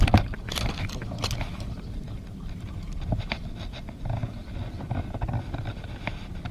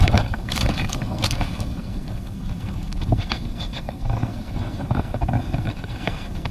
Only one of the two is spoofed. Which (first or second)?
second